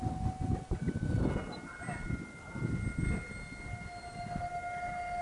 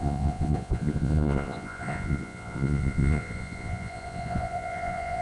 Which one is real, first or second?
first